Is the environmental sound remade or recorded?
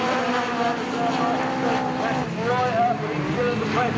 recorded